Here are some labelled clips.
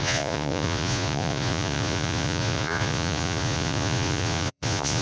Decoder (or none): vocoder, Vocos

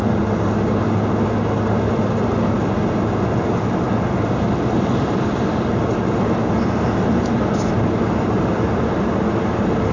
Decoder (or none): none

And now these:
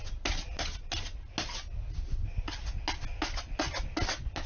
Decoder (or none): none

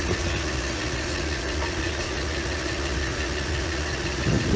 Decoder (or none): vocoder, Vocos